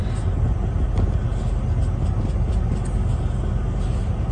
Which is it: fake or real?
real